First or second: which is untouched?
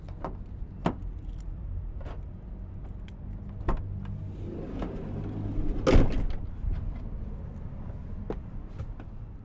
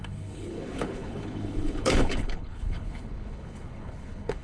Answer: first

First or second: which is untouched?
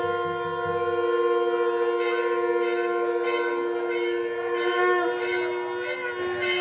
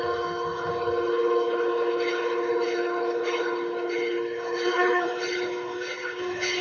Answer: first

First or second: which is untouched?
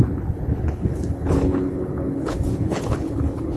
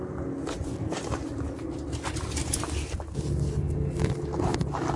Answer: second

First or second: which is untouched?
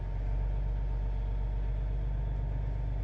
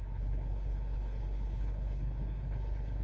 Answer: first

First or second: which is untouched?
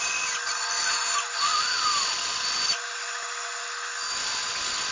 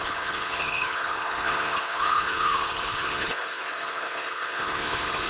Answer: first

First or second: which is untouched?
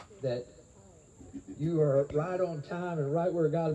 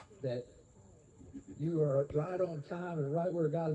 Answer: first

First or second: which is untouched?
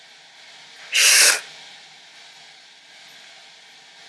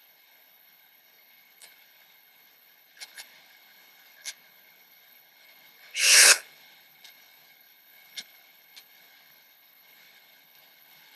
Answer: first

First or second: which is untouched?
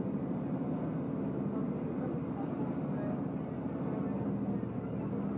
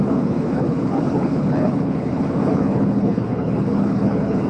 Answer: first